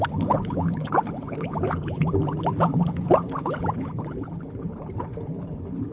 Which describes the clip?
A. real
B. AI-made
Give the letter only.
B